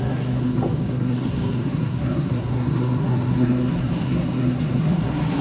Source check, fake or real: fake